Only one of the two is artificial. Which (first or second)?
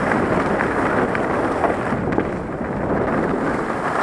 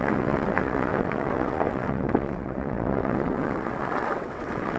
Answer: second